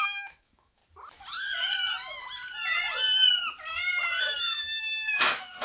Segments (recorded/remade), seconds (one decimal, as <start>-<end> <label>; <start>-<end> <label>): 0.0-0.8 remade; 0.8-4.2 recorded; 4.2-5.6 remade